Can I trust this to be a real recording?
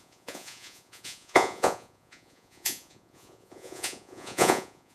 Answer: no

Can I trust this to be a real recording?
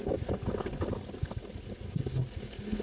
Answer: yes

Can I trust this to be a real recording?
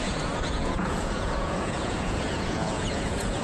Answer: no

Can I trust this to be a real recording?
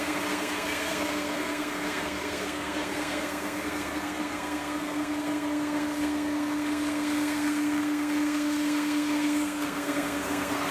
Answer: no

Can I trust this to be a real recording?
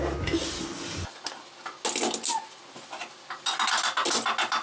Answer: yes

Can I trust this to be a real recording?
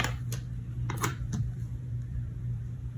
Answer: no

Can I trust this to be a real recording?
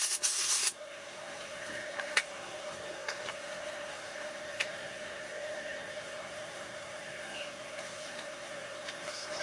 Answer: no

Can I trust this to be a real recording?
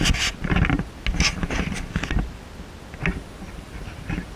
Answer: yes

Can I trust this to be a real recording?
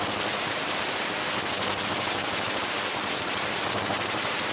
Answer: no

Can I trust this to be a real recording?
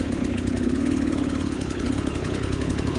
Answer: no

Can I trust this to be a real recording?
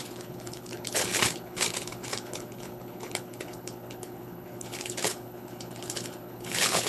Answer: no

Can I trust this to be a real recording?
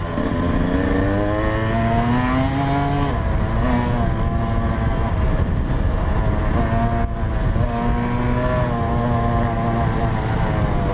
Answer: yes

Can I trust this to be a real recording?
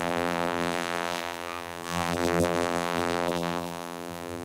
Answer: no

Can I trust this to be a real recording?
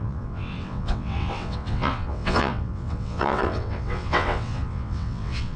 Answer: no